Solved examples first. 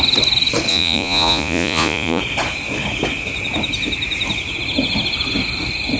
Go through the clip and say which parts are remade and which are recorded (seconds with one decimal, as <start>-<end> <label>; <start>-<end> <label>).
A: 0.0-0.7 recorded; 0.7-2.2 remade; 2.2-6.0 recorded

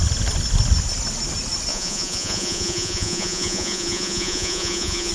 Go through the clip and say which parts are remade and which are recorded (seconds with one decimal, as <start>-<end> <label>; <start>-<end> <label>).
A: 0.0-1.7 recorded; 1.7-5.1 remade

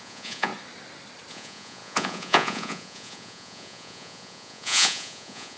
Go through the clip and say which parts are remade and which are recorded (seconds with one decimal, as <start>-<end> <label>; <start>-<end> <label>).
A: 0.0-0.5 remade; 0.5-1.3 recorded; 1.3-5.6 remade

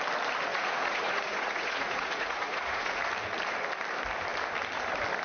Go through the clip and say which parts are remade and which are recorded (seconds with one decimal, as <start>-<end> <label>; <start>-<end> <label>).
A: 0.0-0.5 recorded; 0.5-3.0 remade; 3.0-5.2 recorded